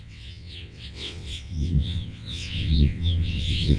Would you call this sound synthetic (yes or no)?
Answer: yes